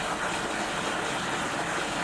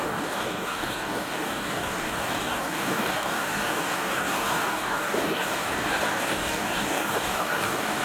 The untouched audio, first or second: first